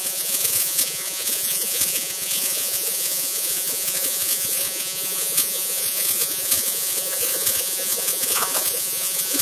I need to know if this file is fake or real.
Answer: fake